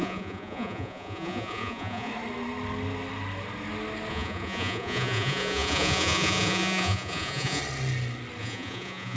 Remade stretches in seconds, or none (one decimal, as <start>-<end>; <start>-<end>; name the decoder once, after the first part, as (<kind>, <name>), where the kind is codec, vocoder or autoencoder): 0.0-2.1 (vocoder, Vocos); 4.1-7.6; 8.4-9.2